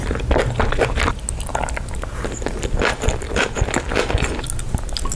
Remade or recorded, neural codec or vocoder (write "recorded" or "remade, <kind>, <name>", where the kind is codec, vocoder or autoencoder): recorded